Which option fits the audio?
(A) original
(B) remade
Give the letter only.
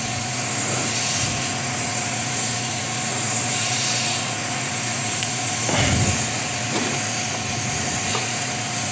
B